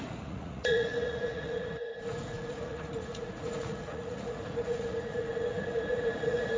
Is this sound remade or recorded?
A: remade